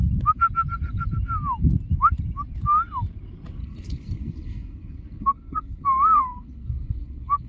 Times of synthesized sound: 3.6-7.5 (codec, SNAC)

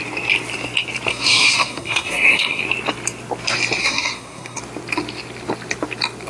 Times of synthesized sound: 1.1-2.6 (codec, SNAC); 3.8-4.6

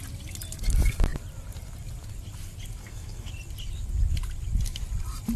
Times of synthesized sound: 2.8-3.3 (codec, SNAC)

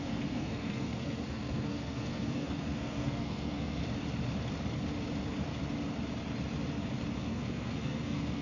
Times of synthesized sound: 0.0-3.8 (codec, SNAC); 7.2-8.4

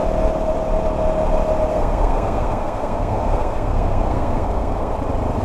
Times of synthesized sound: 1.7-4.9 (codec, SNAC)